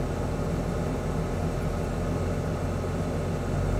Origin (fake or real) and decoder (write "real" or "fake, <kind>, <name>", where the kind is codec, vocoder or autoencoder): real